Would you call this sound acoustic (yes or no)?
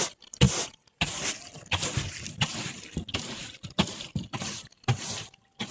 yes